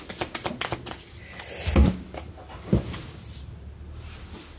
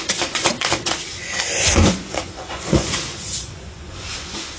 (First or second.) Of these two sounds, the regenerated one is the second